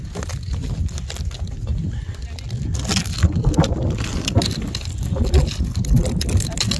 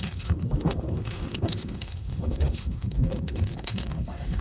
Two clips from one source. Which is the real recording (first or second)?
first